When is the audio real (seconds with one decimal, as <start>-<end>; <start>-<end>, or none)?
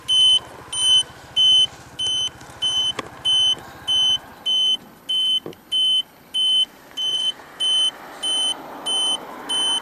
0.0-7.1; 7.6-9.8